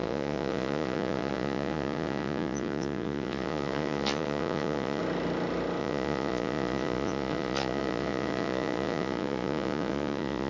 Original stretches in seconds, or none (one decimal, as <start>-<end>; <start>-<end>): 5.0-5.8